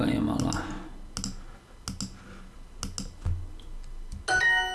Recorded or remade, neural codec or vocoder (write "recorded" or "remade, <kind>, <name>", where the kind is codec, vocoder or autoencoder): recorded